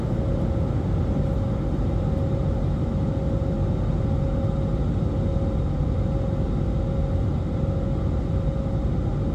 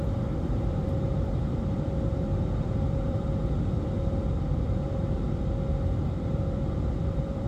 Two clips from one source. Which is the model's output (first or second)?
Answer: second